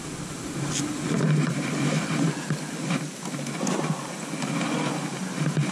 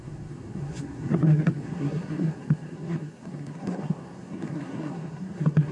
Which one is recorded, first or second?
first